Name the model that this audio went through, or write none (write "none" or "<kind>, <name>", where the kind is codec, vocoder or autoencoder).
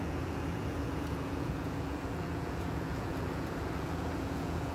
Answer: vocoder, Vocos